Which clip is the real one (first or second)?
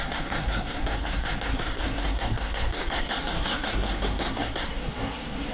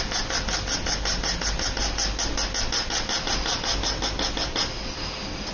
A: second